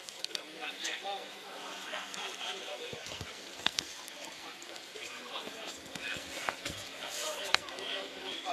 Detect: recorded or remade remade